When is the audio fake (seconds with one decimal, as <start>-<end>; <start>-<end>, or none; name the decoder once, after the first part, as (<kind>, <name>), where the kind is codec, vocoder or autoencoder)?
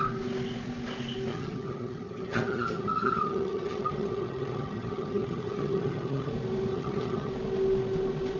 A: 1.3-6.3 (vocoder, HiFi-GAN); 6.7-7.3